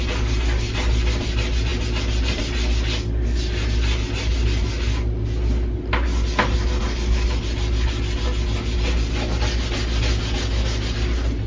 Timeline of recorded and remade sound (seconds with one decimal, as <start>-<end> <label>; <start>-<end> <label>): 0.0-11.5 recorded